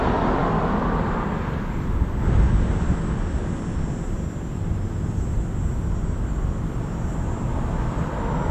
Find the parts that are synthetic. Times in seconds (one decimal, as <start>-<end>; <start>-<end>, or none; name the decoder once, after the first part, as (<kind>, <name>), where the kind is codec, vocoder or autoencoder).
none